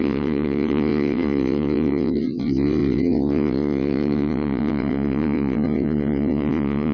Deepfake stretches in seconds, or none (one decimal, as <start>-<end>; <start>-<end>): 0.0-6.9